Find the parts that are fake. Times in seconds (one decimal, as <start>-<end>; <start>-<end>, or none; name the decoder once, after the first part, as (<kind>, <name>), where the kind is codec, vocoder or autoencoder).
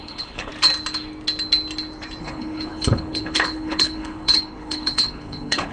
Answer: 0.0-0.5 (codec, HILCodec); 2.2-5.7